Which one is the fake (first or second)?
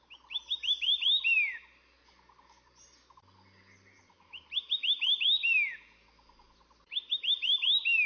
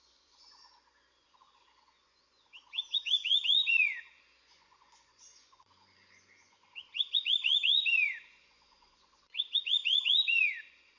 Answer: second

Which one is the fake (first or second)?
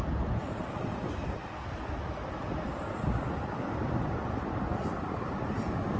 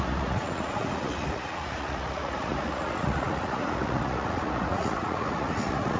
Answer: second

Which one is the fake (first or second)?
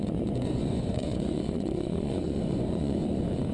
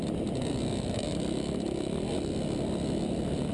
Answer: first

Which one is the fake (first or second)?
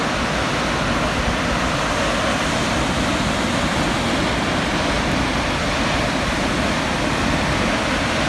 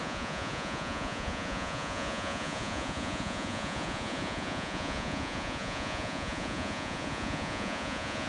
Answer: second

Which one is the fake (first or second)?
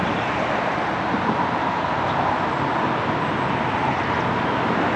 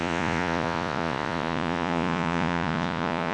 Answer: second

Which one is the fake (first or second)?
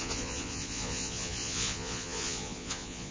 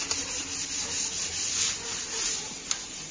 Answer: first